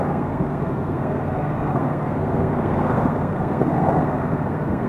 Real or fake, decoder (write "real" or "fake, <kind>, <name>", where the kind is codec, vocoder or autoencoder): fake, codec, SNAC